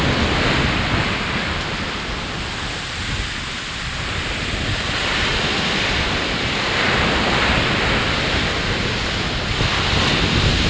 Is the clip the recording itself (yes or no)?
yes